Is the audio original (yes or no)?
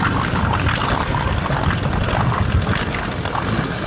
yes